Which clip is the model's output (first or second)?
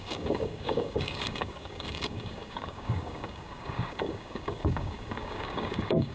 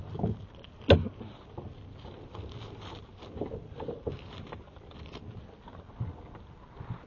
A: first